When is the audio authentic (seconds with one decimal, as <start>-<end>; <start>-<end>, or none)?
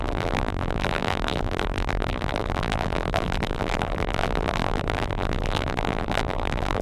none